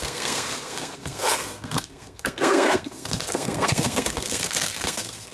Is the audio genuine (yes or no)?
no